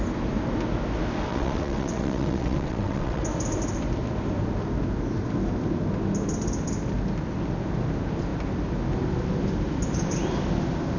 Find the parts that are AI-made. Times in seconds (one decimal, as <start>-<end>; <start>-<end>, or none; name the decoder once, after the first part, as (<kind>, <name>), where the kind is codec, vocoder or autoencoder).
1.3-3.2 (vocoder, WaveNeXt)